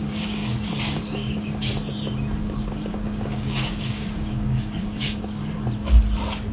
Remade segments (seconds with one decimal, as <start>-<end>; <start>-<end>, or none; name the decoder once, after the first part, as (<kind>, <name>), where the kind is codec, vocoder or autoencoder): 0.0-1.7 (codec, DAC); 2.4-5.4

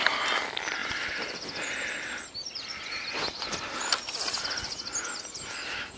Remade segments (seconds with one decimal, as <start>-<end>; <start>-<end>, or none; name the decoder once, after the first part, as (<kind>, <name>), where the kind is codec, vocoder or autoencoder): none

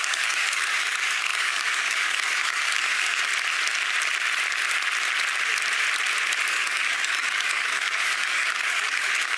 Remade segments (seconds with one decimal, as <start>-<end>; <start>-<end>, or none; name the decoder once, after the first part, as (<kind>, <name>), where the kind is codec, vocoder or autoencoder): 0.0-3.3 (codec, DAC); 6.5-9.4

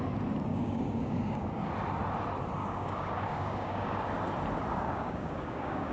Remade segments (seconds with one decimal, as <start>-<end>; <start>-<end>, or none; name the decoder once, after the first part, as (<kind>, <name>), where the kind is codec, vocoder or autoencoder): 0.5-1.7 (codec, DAC); 2.6-4.0; 4.7-5.9

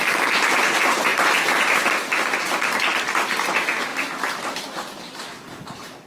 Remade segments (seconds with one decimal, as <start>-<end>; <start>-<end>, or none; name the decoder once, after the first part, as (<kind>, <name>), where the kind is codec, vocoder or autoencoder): none

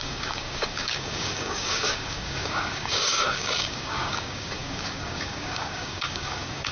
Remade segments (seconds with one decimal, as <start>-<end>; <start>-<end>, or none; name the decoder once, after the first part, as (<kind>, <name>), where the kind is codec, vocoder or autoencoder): 0.0-6.7 (codec, DAC)

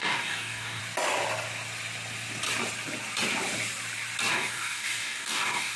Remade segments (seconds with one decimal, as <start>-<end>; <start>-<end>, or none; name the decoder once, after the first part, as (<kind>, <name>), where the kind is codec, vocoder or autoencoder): 0.0-0.8 (codec, DAC); 4.3-5.8

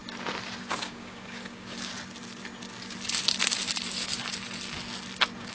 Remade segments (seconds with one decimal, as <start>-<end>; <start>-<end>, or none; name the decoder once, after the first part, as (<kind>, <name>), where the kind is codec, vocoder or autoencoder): 0.6-1.9 (codec, DAC)